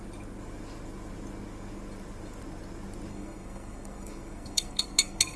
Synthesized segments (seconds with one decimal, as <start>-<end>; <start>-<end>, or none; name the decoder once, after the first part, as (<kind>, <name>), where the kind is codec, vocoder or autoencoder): 3.1-5.4 (codec, SNAC)